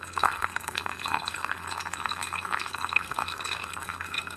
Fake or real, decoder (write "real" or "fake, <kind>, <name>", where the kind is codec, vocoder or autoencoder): fake, codec, SNAC